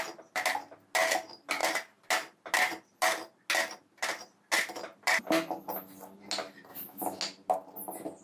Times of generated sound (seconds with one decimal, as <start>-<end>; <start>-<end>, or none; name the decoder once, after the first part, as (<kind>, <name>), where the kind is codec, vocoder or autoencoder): 6.7-7.2 (autoencoder, DAC-VAE)